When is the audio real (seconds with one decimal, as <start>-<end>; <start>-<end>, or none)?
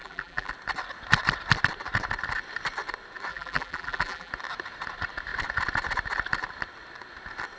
0.5-3.3; 4.3-7.6